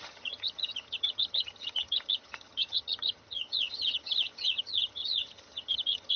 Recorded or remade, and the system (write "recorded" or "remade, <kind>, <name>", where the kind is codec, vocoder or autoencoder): remade, vocoder, HiFi-GAN